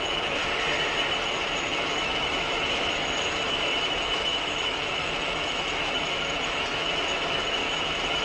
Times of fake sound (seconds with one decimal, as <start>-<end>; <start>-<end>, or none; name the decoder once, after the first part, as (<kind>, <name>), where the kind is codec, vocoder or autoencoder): 0.0-0.4 (autoencoder, DAC-VAE); 1.2-8.2